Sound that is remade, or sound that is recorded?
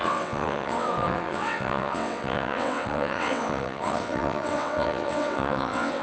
remade